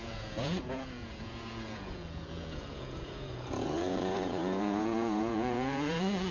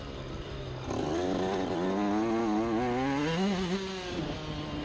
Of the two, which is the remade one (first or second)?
first